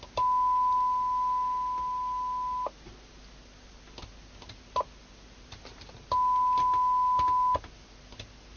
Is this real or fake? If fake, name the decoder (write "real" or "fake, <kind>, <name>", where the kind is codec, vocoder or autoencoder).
real